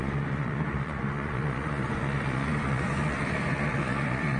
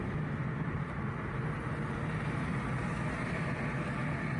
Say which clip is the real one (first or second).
second